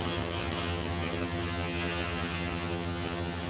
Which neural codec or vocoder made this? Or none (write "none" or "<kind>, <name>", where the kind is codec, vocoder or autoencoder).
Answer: vocoder, HiFi-GAN